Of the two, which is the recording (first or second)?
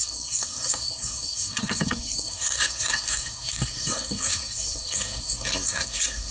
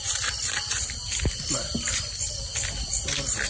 second